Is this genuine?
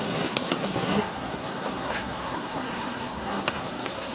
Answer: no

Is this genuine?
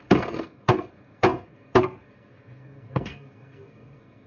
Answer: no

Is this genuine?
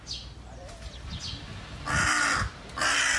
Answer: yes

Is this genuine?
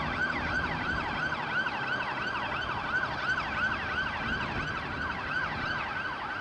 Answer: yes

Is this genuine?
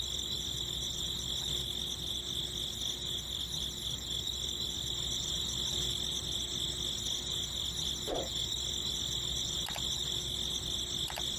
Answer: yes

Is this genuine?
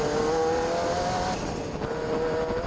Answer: yes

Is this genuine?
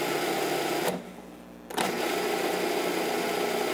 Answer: yes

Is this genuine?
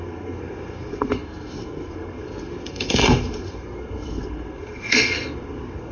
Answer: no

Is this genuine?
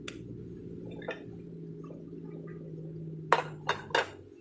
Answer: yes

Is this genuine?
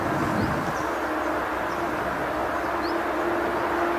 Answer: yes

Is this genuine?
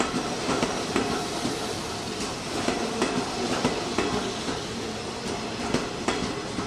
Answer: yes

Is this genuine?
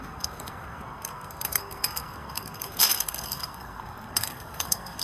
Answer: no